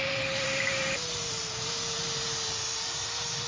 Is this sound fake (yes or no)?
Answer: yes